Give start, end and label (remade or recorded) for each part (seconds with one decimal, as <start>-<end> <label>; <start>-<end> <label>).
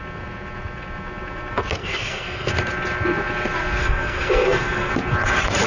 0.0-1.8 recorded; 1.8-2.5 remade; 2.5-3.8 recorded; 3.8-4.9 remade; 4.9-5.7 recorded